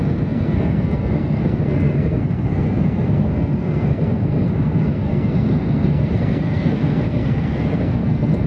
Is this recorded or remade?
remade